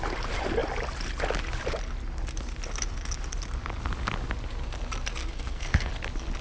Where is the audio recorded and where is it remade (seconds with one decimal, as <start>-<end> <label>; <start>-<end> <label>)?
0.0-5.2 recorded; 5.2-5.9 remade; 5.9-6.4 recorded